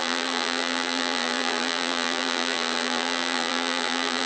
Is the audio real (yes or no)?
no